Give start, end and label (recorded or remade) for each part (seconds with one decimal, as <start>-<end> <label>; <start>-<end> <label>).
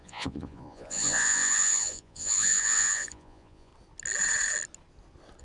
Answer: 0.0-3.7 remade; 3.7-5.4 recorded